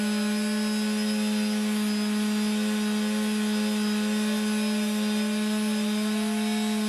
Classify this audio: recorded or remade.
recorded